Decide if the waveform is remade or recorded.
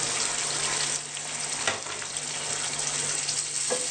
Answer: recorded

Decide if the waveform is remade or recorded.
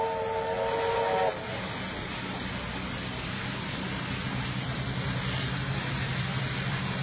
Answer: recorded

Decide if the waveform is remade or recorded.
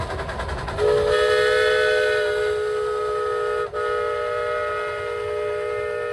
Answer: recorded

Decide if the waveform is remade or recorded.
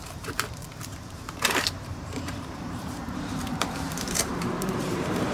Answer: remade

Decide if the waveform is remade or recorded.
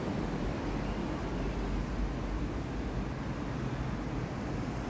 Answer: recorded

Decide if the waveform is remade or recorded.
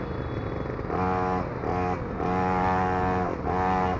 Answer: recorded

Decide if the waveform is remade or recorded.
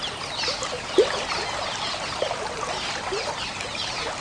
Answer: recorded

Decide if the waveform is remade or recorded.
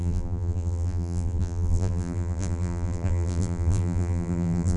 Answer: remade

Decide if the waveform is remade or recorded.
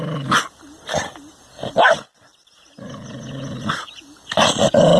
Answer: recorded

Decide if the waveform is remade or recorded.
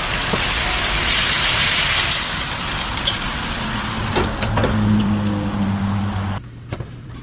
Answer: recorded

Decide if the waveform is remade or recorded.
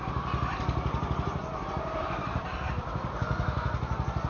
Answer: remade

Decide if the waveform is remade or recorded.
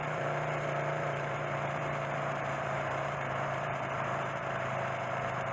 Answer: remade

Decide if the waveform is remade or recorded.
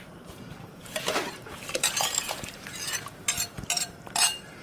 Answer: remade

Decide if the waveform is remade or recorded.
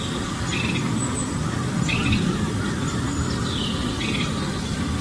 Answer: remade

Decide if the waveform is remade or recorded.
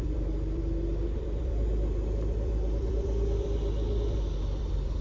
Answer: remade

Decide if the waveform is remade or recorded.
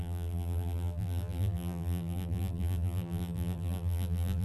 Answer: remade